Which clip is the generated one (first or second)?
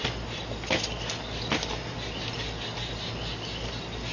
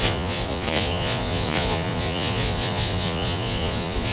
second